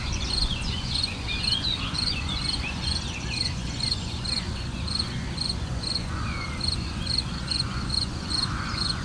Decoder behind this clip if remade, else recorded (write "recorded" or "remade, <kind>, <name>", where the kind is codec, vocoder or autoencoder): remade, vocoder, Vocos